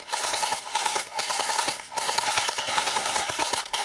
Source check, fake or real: fake